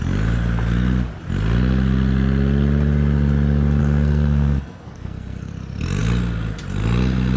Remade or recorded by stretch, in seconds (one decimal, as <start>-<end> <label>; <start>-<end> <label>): 0.0-3.8 recorded; 3.8-5.5 remade; 5.5-7.4 recorded